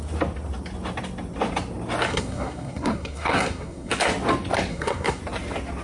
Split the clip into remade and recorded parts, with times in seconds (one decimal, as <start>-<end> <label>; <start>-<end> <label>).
0.0-2.1 recorded; 2.1-3.9 remade; 3.9-4.7 recorded; 4.7-5.2 remade; 5.2-5.8 recorded